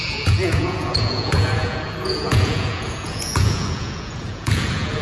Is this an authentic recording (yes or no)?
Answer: no